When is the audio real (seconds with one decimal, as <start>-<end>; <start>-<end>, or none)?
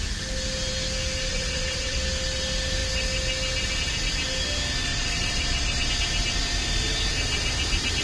0.0-1.3; 2.0-4.9; 5.9-8.0